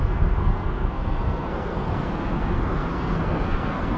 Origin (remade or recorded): remade